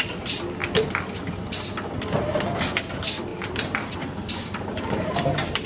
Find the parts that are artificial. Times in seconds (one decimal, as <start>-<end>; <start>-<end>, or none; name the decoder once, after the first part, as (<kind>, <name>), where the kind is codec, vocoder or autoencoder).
3.3-3.9 (vocoder, BigVGAN v2); 4.4-5.7